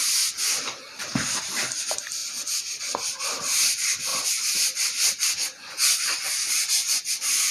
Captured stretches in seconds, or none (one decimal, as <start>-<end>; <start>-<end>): 0.0-7.5